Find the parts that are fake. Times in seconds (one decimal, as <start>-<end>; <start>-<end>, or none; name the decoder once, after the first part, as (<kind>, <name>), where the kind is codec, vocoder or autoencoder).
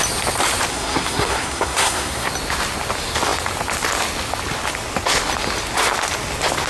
0.7-2.3 (codec, SNAC)